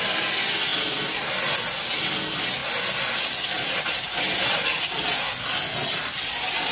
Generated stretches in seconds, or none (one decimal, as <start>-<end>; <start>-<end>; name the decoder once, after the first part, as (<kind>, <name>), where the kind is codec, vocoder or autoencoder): none